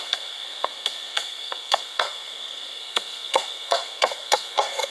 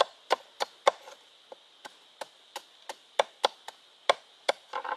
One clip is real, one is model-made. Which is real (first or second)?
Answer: second